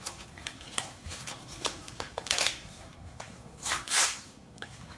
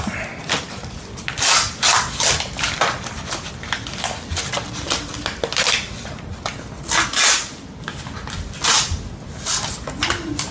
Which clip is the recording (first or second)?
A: second